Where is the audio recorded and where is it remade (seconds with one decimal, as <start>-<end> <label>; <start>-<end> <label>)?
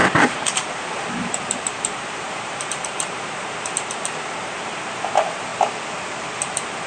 0.0-5.5 remade; 5.5-6.2 recorded; 6.2-6.9 remade